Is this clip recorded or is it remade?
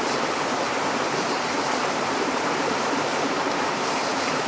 remade